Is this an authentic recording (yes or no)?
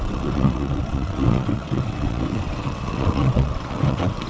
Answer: no